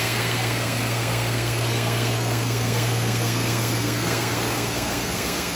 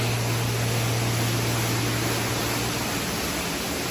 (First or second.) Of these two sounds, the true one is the second